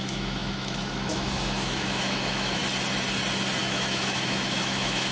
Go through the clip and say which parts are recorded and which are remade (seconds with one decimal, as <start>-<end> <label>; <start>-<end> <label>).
0.0-2.6 remade; 2.6-3.6 recorded; 3.6-5.1 remade

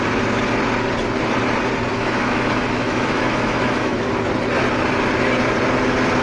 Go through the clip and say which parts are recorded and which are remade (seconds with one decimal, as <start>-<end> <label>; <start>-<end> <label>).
0.0-1.9 recorded; 1.9-4.1 remade; 4.1-6.2 recorded

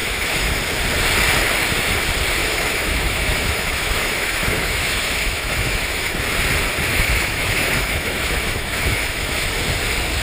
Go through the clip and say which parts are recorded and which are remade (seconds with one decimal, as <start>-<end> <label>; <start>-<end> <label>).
0.0-0.6 remade; 0.6-2.4 recorded; 2.4-6.2 remade; 6.2-6.9 recorded; 6.9-9.5 remade; 9.5-10.2 recorded